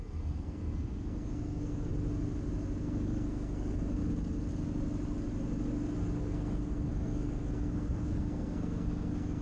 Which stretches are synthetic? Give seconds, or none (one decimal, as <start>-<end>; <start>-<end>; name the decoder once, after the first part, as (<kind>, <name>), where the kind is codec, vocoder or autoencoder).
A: 0.0-1.9 (codec, SNAC); 2.8-4.0; 6.2-9.4

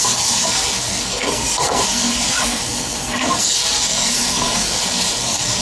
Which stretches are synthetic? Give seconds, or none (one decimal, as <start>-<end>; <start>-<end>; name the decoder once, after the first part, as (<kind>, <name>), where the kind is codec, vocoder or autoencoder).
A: 0.0-5.6 (codec, SNAC)

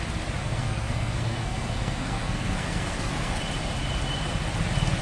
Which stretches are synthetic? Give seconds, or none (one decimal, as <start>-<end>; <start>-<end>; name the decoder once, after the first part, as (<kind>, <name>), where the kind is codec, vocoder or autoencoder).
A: 0.4-3.4 (codec, SNAC)

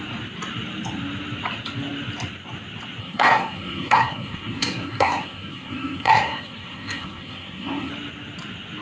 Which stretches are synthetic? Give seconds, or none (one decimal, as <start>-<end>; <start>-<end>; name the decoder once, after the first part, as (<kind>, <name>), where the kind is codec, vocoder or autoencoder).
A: 3.0-7.9 (codec, SNAC)

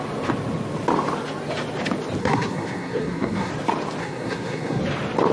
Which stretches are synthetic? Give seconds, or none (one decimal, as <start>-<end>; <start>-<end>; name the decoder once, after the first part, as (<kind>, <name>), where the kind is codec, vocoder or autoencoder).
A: 2.2-3.5 (codec, SNAC); 4.0-4.8

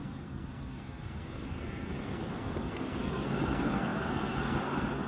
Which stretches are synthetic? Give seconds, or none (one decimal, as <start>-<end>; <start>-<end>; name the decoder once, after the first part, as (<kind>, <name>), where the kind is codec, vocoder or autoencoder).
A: 0.0-5.1 (codec, SNAC)